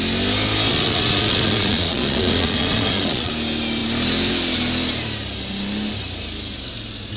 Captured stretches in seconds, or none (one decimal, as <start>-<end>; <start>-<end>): 0.0-0.7; 3.3-7.2